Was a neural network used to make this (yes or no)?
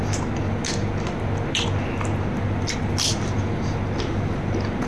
no